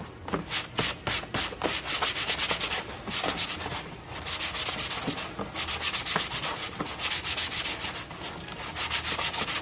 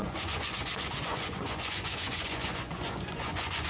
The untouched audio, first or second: first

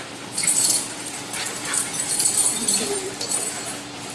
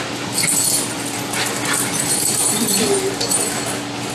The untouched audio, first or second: second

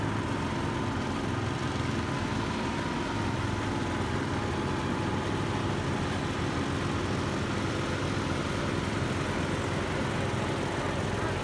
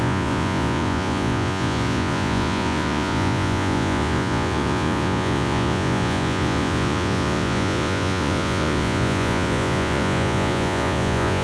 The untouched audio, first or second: first